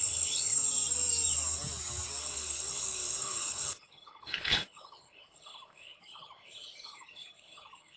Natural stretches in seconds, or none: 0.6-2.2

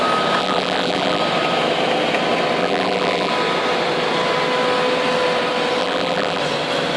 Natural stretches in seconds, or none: 0.0-0.4; 1.2-2.6; 3.3-5.8; 6.4-7.0